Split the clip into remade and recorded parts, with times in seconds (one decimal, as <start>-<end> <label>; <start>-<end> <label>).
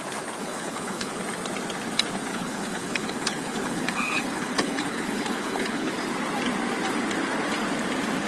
0.0-0.4 recorded; 0.4-1.2 remade; 1.2-2.3 recorded; 2.3-5.9 remade; 5.9-8.3 recorded